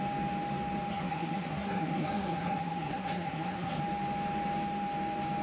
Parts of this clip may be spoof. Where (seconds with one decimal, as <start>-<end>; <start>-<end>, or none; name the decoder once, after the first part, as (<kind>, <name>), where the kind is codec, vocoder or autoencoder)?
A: 0.9-3.8 (codec, SNAC)